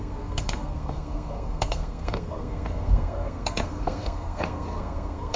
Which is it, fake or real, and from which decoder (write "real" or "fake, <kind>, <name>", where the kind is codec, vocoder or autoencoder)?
fake, codec, SNAC